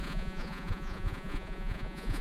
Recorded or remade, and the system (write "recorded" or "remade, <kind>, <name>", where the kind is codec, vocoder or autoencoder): remade, vocoder, Vocos